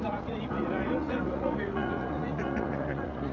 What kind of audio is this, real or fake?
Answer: fake